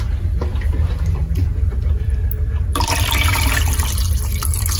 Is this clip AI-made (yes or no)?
yes